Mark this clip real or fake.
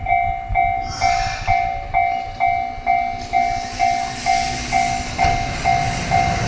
real